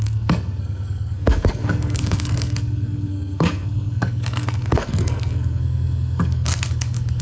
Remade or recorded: remade